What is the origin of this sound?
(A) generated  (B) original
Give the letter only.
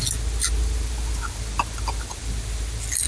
B